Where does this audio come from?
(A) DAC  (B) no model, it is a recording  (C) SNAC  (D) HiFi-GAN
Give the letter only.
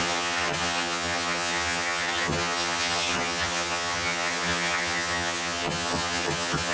D